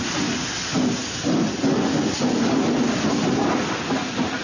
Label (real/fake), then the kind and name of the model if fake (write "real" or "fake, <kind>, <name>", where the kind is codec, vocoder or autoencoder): real